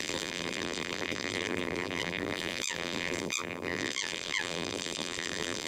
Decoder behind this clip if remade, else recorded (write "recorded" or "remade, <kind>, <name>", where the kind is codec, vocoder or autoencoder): remade, vocoder, BigVGAN v2